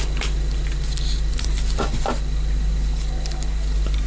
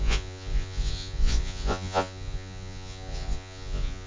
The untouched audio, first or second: first